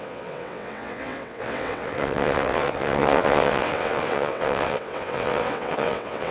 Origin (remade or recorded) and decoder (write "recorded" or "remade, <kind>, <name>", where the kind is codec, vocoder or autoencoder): remade, vocoder, WaveNeXt